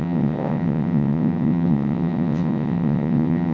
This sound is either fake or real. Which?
fake